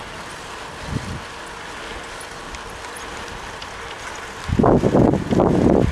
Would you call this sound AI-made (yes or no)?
no